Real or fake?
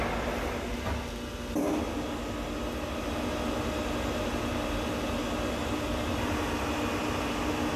real